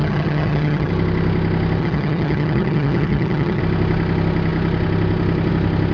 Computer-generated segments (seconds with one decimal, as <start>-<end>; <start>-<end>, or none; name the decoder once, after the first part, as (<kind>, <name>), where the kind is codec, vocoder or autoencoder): 0.0-0.9 (vocoder, HiFi-GAN); 1.8-3.6